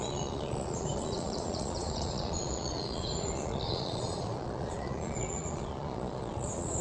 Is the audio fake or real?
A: fake